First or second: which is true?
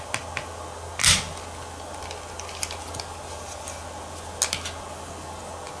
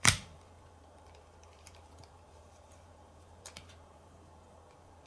first